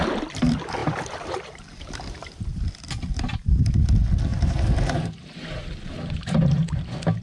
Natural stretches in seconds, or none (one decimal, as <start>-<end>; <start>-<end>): 0.0-0.8; 1.6-4.3; 6.8-7.2